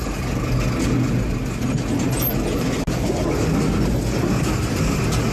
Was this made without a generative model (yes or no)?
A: yes